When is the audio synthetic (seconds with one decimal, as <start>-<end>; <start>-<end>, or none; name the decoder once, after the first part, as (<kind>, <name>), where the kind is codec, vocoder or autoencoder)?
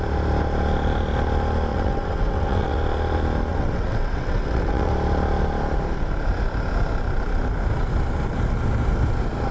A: 1.7-2.8 (vocoder, WaveNeXt); 3.5-4.9